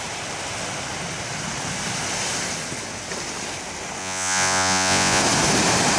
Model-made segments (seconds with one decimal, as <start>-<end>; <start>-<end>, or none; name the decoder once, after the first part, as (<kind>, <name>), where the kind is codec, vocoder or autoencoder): 4.0-5.2 (vocoder, Vocos)